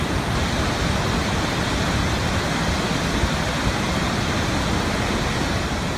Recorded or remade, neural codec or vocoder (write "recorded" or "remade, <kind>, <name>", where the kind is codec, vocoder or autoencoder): recorded